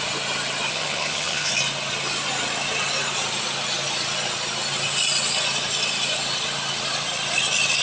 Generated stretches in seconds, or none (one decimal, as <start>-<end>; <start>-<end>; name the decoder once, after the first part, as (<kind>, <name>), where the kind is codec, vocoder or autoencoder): 0.7-1.5 (vocoder, HiFi-GAN)